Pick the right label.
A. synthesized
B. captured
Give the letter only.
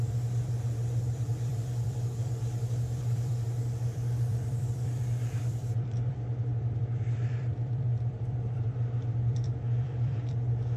A